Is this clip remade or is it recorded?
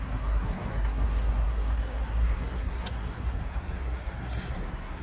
remade